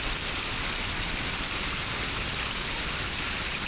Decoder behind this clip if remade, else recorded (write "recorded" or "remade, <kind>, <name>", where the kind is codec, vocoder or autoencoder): recorded